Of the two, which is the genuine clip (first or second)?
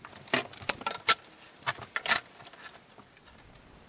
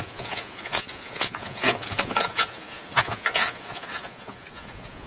first